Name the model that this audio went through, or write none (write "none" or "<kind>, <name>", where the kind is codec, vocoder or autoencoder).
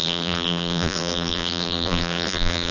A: vocoder, BigVGAN v2